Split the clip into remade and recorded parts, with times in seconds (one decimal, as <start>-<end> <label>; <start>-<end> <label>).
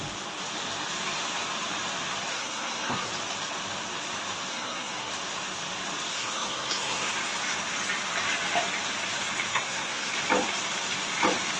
0.0-2.3 recorded; 2.3-3.1 remade; 3.1-4.5 recorded; 4.5-5.1 remade; 5.1-6.1 recorded; 6.1-7.1 remade; 7.1-9.5 recorded; 9.5-10.1 remade; 10.1-11.6 recorded